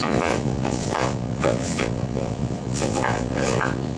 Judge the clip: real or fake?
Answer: fake